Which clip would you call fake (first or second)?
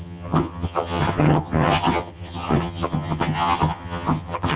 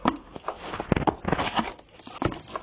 first